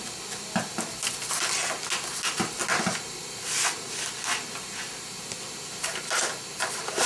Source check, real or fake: real